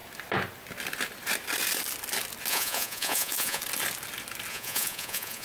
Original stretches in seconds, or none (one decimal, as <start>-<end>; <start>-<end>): 0.0-2.5; 3.6-4.5